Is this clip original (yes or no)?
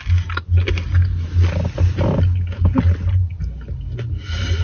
yes